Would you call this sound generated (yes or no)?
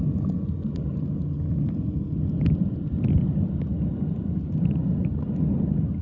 no